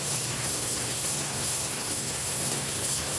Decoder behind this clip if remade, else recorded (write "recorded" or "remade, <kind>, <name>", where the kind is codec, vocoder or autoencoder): remade, codec, SNAC